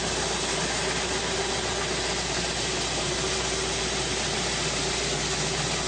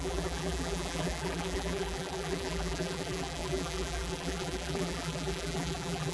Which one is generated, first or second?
second